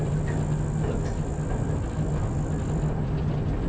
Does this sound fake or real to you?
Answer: real